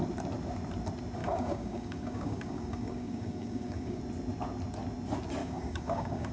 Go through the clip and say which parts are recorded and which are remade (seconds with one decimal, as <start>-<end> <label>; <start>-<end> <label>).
0.0-1.2 recorded; 1.2-4.0 remade; 4.0-5.4 recorded; 5.4-6.3 remade